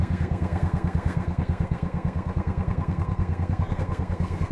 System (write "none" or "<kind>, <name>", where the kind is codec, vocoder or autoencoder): codec, SNAC